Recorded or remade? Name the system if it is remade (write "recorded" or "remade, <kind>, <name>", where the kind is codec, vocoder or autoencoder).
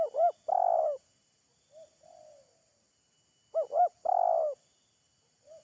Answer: recorded